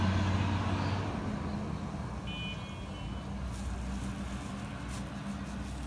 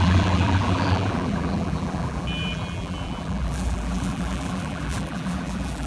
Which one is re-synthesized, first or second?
second